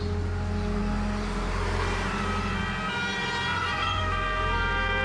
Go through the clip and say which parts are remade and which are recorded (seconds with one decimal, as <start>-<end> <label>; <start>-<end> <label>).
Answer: 0.0-3.5 recorded; 3.5-4.0 remade; 4.0-5.0 recorded